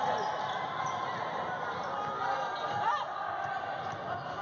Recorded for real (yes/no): yes